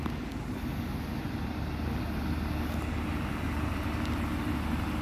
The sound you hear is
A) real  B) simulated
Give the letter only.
A